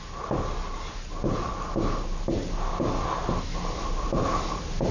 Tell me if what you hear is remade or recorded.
recorded